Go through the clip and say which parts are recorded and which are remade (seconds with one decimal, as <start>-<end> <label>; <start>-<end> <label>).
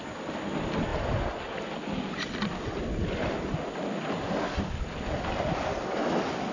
0.0-6.5 recorded